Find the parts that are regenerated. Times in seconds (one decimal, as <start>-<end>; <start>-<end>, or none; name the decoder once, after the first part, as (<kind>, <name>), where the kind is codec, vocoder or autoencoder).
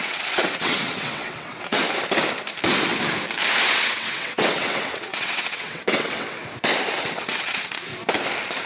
0.0-1.8 (vocoder, WaveNeXt); 3.7-6.4; 7.0-7.9